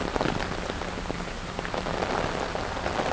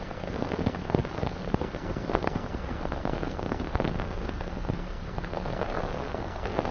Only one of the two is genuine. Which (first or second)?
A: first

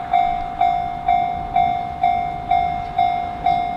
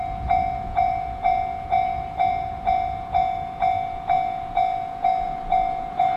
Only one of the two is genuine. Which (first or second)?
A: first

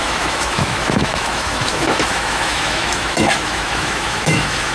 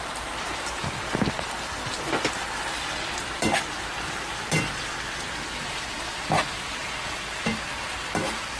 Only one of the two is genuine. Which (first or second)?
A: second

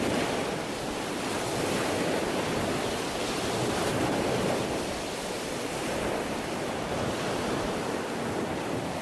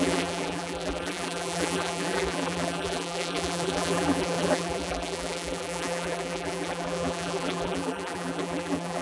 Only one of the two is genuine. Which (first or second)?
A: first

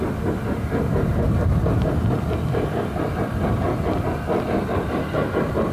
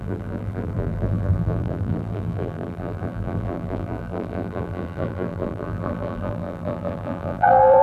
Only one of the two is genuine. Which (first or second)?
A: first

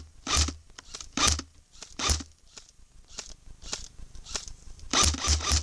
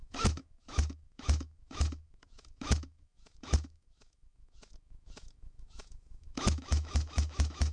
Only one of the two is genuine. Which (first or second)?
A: first